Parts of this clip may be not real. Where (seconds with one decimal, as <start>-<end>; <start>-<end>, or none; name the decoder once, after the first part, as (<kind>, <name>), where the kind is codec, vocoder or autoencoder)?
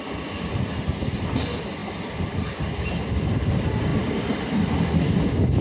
none